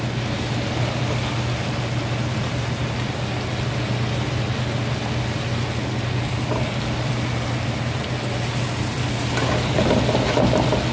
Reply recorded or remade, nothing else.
recorded